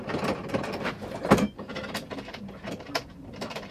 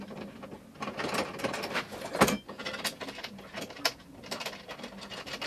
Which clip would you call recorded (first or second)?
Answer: second